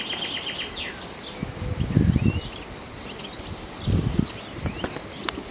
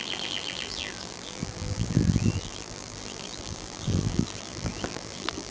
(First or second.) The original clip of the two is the first